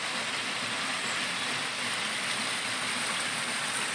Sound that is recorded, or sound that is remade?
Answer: recorded